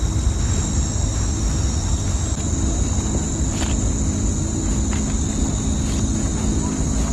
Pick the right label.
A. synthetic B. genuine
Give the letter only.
B